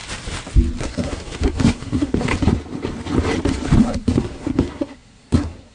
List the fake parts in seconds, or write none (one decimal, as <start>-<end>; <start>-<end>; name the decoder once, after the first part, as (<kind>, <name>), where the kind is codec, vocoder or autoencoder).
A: 0.8-2.3 (codec, SNAC); 3.8-5.7